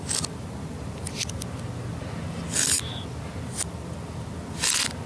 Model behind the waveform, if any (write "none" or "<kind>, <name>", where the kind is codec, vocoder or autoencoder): none